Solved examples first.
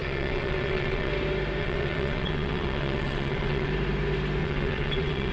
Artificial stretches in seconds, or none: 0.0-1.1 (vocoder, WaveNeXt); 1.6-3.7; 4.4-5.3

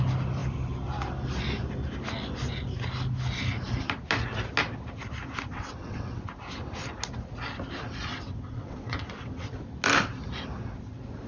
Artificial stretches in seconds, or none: 5.5-6.2 (vocoder, WaveNeXt); 8.1-9.6

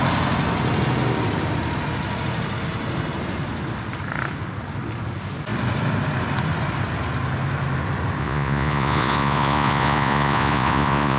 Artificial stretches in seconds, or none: 8.2-11.2 (vocoder, Vocos)

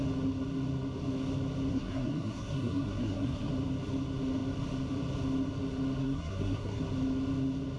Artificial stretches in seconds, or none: 1.7-3.5 (codec, SNAC); 6.0-6.8